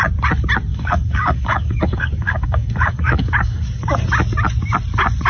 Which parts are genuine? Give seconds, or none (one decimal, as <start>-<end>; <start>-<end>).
0.0-0.7; 3.9-5.3